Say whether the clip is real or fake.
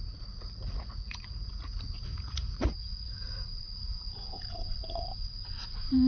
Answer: fake